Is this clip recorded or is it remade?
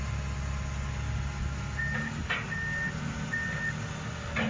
recorded